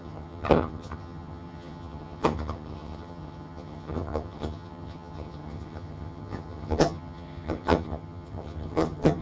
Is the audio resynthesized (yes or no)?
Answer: yes